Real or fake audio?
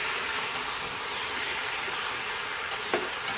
real